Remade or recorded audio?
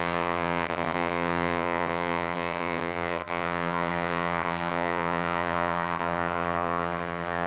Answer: remade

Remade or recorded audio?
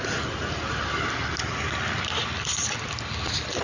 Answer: recorded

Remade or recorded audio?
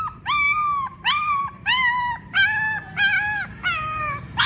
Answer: recorded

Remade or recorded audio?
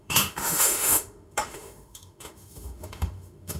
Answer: remade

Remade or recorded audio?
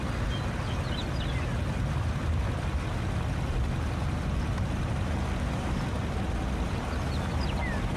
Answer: recorded